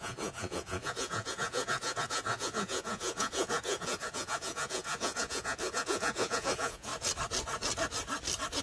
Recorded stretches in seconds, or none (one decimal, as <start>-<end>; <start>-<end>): 6.9-8.6